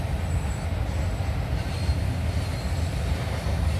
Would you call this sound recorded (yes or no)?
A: yes